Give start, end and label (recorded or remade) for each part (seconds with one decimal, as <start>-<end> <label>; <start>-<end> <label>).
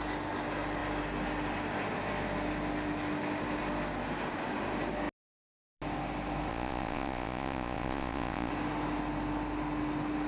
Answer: 0.0-6.5 recorded; 6.5-8.5 remade; 8.5-10.3 recorded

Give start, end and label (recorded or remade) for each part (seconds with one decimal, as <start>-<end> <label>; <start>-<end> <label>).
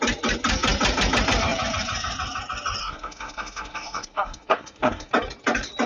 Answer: 0.0-2.8 recorded; 2.8-5.1 remade; 5.1-5.9 recorded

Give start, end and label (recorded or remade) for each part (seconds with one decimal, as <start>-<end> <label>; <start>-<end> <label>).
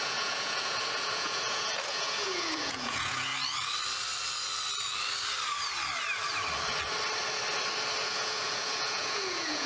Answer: 0.0-3.3 remade; 3.3-8.0 recorded; 8.0-9.7 remade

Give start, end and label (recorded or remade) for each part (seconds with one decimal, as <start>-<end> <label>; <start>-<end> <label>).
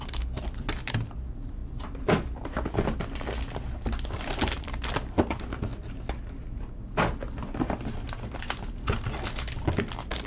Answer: 0.0-10.3 recorded